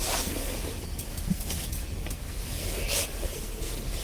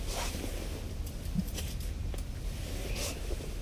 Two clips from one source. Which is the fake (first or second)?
first